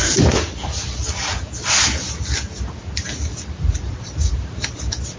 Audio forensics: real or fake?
real